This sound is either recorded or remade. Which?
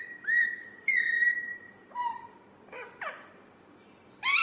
remade